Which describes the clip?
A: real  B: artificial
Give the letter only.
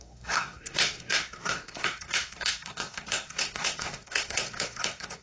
B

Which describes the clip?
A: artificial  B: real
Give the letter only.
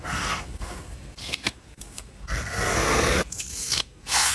A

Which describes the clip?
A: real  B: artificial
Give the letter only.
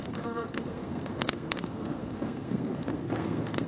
B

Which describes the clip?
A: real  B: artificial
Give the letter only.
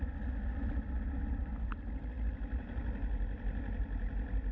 A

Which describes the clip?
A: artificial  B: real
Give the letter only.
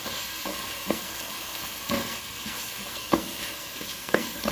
A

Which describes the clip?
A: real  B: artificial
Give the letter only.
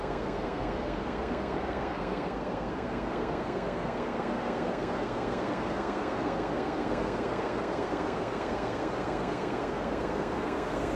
B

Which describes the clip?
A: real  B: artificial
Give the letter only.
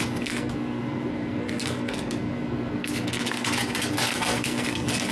B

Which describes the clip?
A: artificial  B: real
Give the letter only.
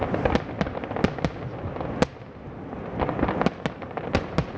B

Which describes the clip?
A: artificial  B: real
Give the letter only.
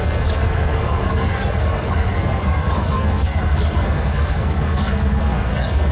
A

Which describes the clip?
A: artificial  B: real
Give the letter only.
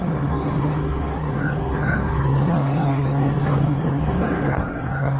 A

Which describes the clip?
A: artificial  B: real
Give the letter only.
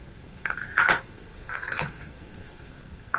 A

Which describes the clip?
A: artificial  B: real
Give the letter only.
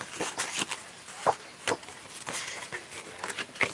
B